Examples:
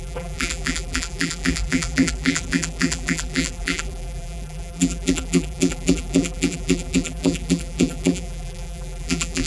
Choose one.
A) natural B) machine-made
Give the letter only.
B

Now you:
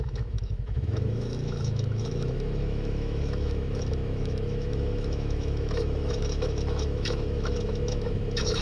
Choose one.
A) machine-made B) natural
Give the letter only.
A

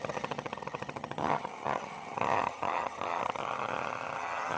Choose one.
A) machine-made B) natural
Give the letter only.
A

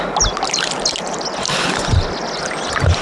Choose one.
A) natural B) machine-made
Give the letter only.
A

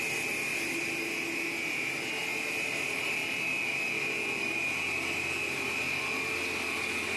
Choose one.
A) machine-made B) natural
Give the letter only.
B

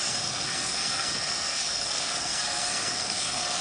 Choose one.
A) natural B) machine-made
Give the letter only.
B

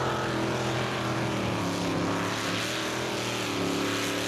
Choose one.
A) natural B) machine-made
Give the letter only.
A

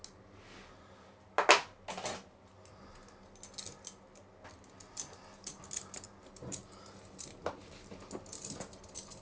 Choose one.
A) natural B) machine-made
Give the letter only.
A